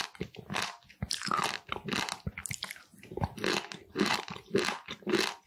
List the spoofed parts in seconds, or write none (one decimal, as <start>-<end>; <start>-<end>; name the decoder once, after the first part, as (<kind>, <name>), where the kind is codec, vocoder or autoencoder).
none